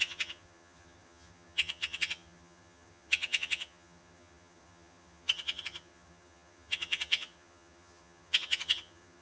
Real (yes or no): no